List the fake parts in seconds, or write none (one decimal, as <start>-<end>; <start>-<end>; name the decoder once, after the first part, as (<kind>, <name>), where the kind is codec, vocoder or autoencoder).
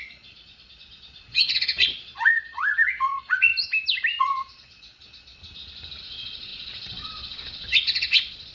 0.0-3.5 (vocoder, Vocos); 4.2-5.4; 6.0-8.5